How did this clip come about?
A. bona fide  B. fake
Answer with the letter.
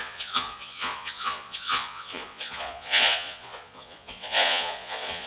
B